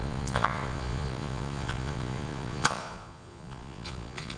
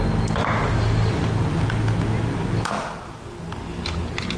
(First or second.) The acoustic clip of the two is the second